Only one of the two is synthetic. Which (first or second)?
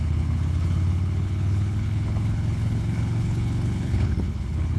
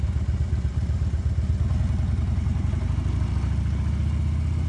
first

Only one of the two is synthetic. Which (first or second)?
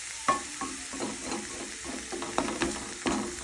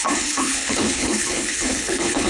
second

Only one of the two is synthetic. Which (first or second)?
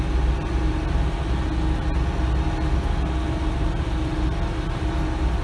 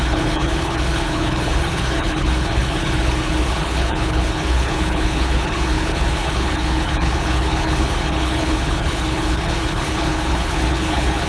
second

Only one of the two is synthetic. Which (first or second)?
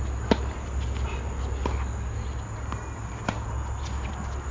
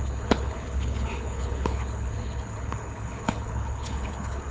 second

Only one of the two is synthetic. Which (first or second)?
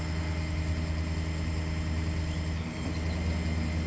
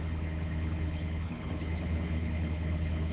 second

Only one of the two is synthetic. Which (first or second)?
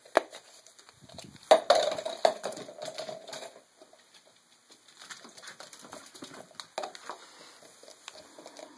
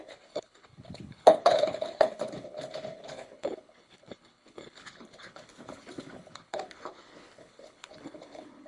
second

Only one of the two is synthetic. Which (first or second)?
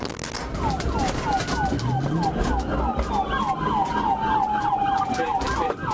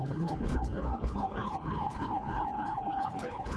second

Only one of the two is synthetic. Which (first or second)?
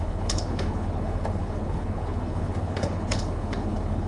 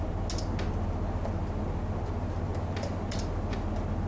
first